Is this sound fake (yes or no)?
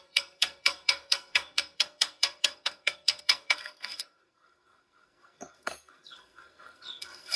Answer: yes